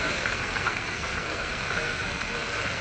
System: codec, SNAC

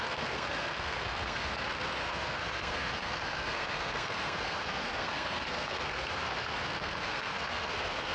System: codec, SNAC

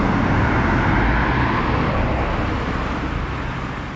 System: none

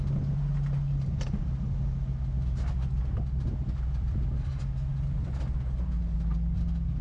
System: none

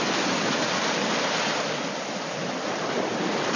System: vocoder, BigVGAN v2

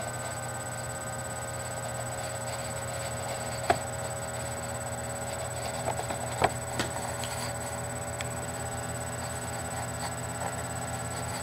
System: none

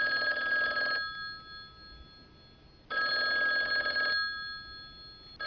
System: none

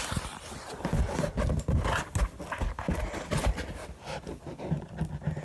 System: none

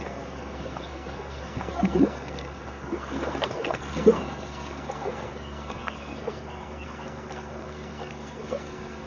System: codec, SNAC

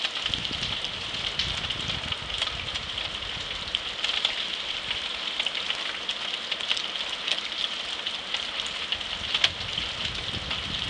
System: none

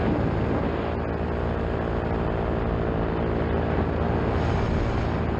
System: none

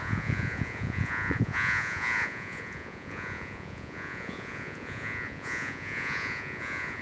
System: vocoder, Vocos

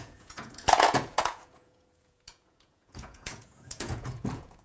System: vocoder, Vocos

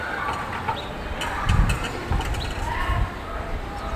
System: none